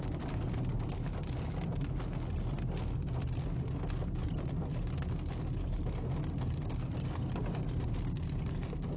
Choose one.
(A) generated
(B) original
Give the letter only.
B